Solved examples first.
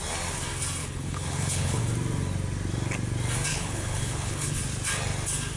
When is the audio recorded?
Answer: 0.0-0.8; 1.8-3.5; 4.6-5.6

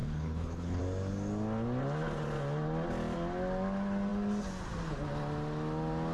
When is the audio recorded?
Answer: 0.8-6.1

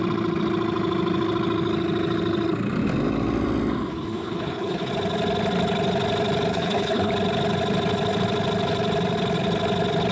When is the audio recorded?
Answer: 0.0-3.9; 4.9-6.5; 7.1-10.1

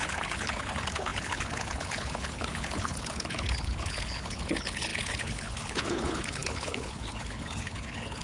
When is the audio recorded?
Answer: none

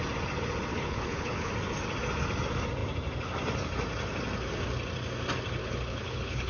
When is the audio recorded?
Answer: 0.0-0.7; 1.5-5.6

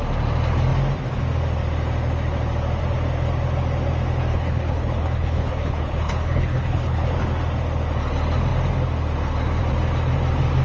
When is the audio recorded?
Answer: 0.0-4.3; 7.1-10.6

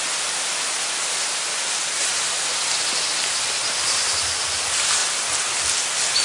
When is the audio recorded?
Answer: 0.0-6.2